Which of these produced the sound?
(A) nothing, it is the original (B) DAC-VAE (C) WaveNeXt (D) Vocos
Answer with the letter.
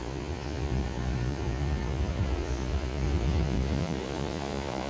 D